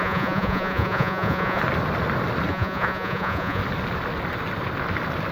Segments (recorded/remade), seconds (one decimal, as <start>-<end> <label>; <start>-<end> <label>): 0.0-1.6 remade; 1.6-2.5 recorded; 2.5-3.6 remade; 3.6-5.3 recorded